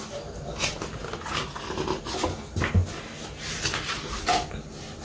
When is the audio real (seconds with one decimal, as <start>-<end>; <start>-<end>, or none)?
0.0-5.0